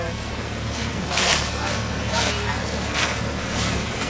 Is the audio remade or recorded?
remade